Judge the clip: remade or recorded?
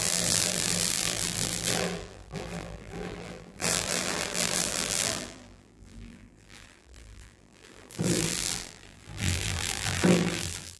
remade